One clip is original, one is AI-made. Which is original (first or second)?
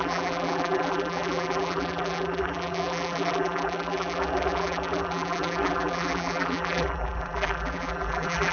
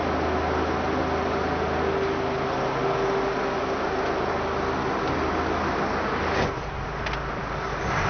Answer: second